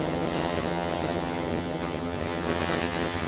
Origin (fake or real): fake